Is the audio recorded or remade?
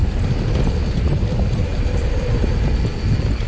recorded